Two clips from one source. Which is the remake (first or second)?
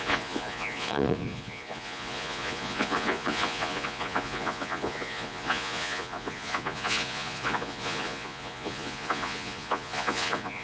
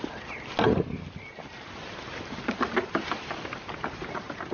first